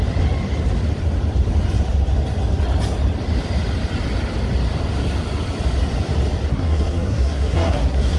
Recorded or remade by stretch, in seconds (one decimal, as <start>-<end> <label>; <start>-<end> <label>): 0.0-6.5 recorded; 6.5-8.2 remade